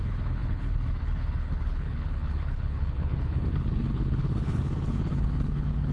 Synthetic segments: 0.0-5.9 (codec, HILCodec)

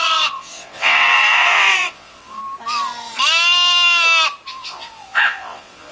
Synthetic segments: 0.0-2.4 (vocoder, WaveNeXt); 4.5-5.9

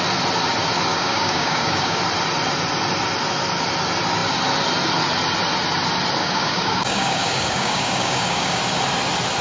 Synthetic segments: 0.9-2.0 (codec, DAC); 6.2-8.6

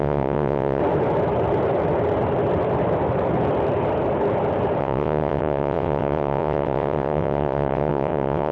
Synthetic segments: 0.0-0.8 (vocoder, WaveNeXt); 4.8-8.5

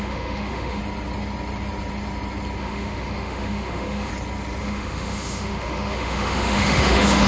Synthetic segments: 0.0-0.8 (autoencoder, DAC-VAE); 2.6-4.1; 4.6-7.3